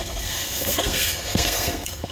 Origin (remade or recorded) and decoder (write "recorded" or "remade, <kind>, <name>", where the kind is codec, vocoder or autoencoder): remade, codec, SNAC